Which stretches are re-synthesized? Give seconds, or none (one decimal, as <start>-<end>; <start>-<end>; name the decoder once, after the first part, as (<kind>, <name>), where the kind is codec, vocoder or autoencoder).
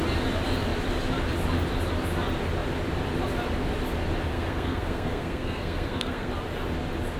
4.3-6.3 (codec, SNAC)